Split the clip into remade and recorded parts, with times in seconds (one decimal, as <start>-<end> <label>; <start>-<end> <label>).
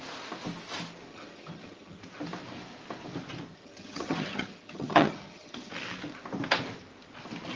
0.0-1.1 recorded; 1.1-2.0 remade; 2.0-3.5 recorded; 3.5-5.7 remade; 5.7-7.6 recorded